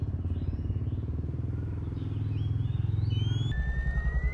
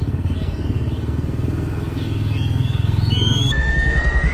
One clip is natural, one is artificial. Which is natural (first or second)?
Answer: first